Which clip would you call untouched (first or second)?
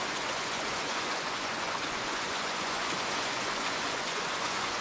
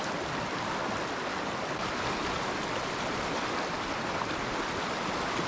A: second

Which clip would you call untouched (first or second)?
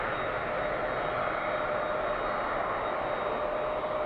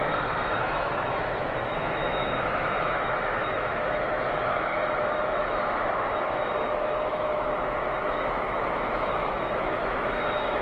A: first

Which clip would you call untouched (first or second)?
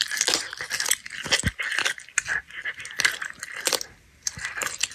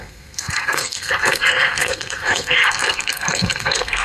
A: first